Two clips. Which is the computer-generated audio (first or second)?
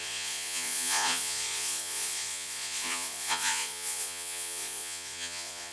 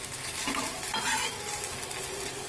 first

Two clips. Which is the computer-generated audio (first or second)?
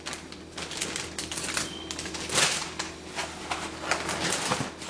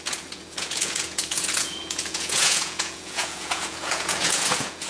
second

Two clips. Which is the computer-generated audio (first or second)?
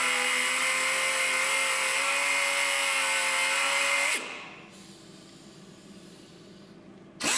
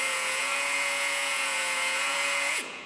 second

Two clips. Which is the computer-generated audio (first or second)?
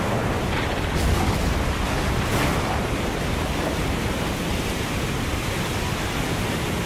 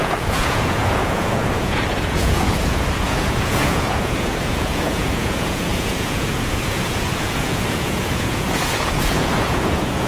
second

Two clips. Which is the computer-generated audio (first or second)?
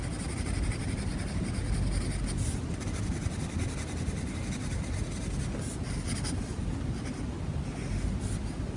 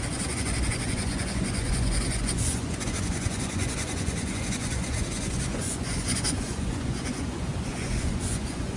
second